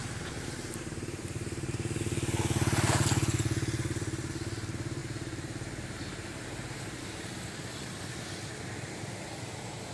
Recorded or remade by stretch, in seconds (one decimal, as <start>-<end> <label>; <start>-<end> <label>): 0.0-2.0 remade; 2.0-5.0 recorded; 5.0-7.0 remade; 7.0-9.9 recorded